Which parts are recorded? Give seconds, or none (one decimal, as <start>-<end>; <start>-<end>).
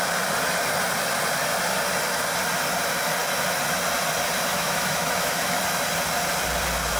0.0-4.5; 5.6-7.0